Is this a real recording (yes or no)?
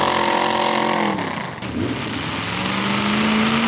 yes